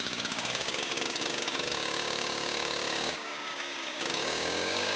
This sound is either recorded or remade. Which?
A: remade